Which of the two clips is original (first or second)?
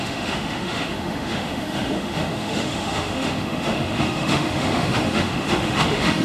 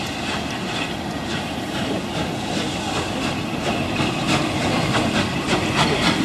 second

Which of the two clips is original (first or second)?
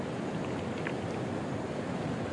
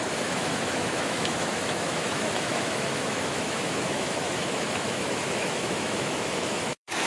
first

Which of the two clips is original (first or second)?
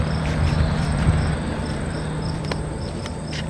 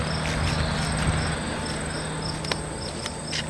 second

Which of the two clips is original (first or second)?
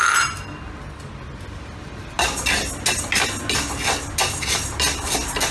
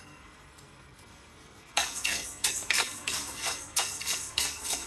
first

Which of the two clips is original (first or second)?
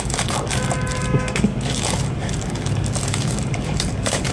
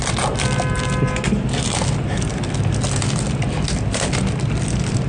second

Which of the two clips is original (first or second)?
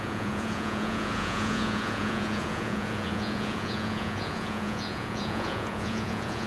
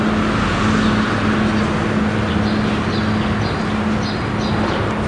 second